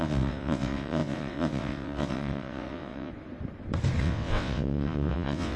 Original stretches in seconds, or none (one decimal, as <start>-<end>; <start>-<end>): 3.1-4.0